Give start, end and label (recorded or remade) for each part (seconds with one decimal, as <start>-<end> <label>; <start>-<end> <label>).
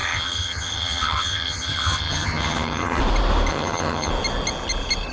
0.0-3.0 remade; 3.0-3.5 recorded; 3.5-4.1 remade; 4.1-5.1 recorded